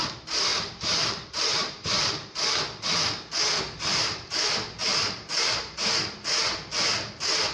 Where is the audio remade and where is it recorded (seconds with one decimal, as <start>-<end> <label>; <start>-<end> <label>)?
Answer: 0.0-0.5 recorded; 0.5-2.6 remade; 2.6-3.9 recorded; 3.9-4.5 remade; 4.5-4.9 recorded; 4.9-6.0 remade; 6.0-7.5 recorded